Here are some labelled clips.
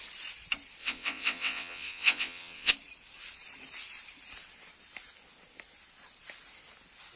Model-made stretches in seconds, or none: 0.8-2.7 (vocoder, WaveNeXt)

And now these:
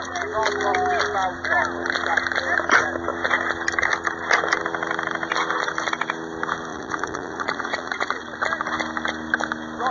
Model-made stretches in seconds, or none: 6.7-8.2 (vocoder, Vocos)

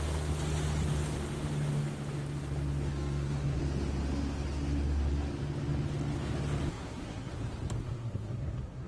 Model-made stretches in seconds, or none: 2.9-3.6 (codec, SNAC); 6.7-7.3; 7.8-8.9

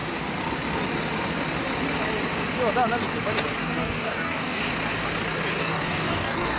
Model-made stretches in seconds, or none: 3.6-4.6 (codec, DAC); 5.6-6.6